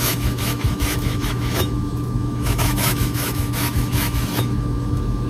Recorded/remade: remade